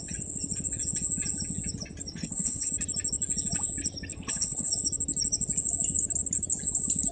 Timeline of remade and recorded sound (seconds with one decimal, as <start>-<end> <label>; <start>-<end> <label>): 0.0-2.1 recorded; 2.1-2.7 remade; 2.7-4.1 recorded; 4.1-4.7 remade; 4.7-7.1 recorded